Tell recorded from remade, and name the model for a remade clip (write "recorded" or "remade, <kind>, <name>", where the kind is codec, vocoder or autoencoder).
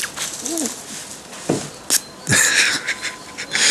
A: recorded